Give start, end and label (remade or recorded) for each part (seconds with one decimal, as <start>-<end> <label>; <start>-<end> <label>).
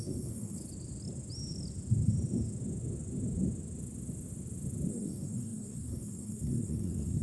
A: 0.0-0.6 remade; 0.6-4.9 recorded; 4.9-7.2 remade